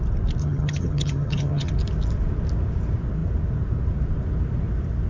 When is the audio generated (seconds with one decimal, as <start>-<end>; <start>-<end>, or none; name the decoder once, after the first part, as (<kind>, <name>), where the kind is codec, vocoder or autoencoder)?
0.4-1.7 (vocoder, HiFi-GAN)